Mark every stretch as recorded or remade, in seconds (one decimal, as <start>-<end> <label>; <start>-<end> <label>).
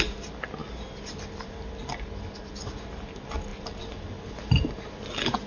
0.0-5.5 recorded